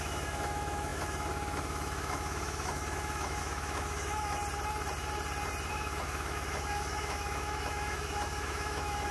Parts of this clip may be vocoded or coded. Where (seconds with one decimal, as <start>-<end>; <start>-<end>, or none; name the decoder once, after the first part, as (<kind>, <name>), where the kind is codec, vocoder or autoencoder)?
0.0-4.4 (autoencoder, DAC-VAE); 5.7-9.1